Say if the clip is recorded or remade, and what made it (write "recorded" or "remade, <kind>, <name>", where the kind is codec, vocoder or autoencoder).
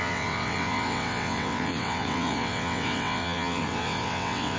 remade, vocoder, WaveNeXt